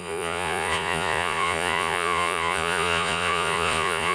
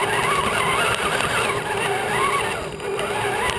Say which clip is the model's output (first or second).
first